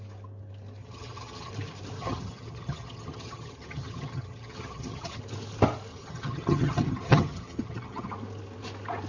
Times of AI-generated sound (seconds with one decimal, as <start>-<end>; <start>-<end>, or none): 0.8-1.5; 2.0-5.2; 5.9-8.1

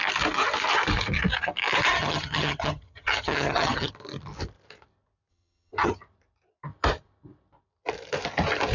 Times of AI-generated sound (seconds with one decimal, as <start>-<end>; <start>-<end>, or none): 1.9-3.9; 5.3-6.0

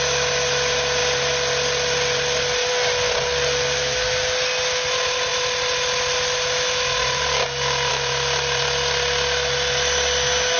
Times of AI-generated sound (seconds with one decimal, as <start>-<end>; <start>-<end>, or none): none